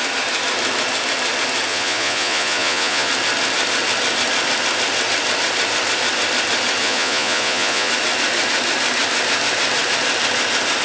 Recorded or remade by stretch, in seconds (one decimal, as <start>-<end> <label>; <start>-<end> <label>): 0.0-1.7 recorded; 1.7-3.1 remade; 3.1-6.8 recorded; 6.8-7.9 remade; 7.9-10.8 recorded